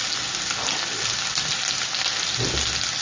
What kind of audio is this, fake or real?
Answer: real